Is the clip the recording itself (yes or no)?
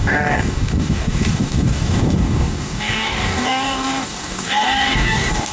no